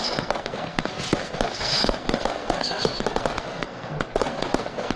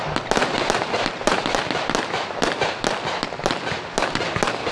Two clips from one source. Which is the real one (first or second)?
second